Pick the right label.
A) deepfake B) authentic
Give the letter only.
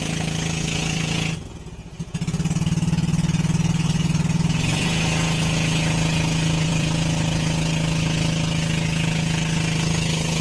A